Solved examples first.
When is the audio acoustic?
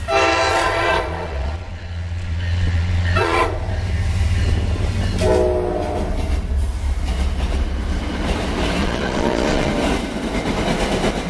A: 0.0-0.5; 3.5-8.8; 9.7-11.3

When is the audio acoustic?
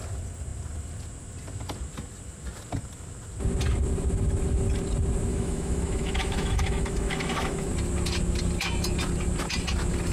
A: 0.0-5.3; 7.7-10.1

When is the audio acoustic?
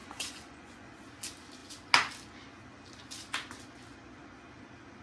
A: 0.9-5.0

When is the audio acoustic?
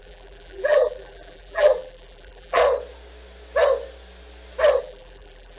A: 2.6-4.8